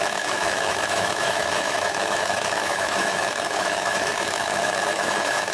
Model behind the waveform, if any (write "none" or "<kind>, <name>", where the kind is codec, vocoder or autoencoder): autoencoder, DAC-VAE